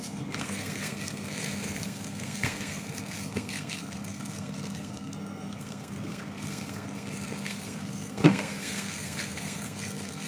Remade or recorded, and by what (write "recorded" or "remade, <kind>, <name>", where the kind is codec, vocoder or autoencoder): remade, codec, SNAC